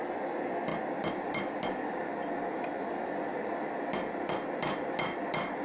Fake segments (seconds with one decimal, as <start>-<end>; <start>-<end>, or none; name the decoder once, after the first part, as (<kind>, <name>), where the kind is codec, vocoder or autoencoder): 0.7-3.4 (vocoder, BigVGAN v2)